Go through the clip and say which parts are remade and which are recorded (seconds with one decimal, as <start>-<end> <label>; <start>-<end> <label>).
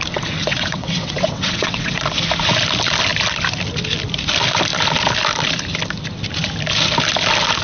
0.0-0.5 recorded; 0.5-2.0 remade; 2.0-7.6 recorded